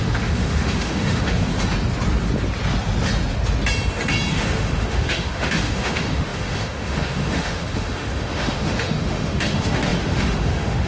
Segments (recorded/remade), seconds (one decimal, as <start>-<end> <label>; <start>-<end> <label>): 0.0-1.5 remade; 1.5-4.3 recorded; 4.3-10.9 remade

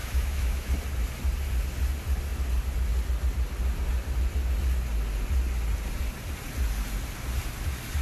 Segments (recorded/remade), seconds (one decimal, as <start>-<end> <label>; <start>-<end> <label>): 0.0-0.7 remade; 0.7-8.0 recorded